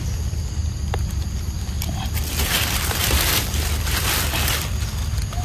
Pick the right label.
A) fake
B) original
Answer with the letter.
B